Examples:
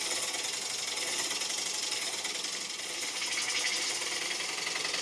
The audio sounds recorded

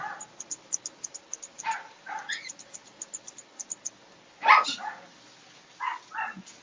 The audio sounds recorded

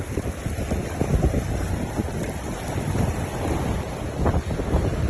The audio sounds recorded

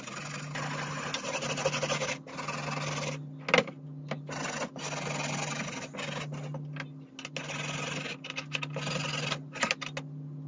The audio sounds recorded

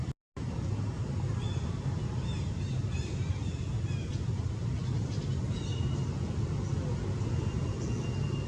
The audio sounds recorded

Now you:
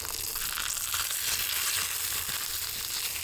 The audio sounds recorded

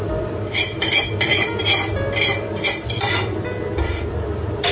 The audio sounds remade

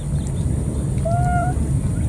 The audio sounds recorded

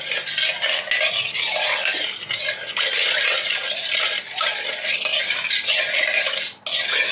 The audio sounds recorded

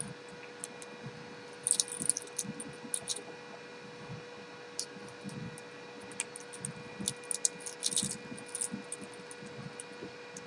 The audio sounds recorded